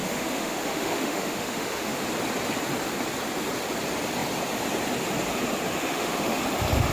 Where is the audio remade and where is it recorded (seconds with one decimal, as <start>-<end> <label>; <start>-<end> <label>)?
0.0-2.0 remade; 2.0-5.8 recorded; 5.8-6.4 remade; 6.4-6.9 recorded